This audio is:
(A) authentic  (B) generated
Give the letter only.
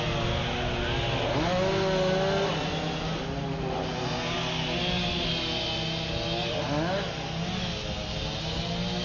A